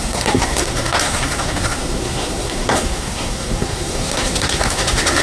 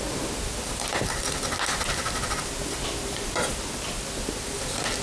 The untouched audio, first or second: second